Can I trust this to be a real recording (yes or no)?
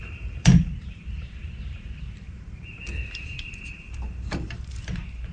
no